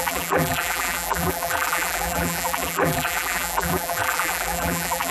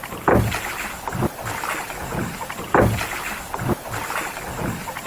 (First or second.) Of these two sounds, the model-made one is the first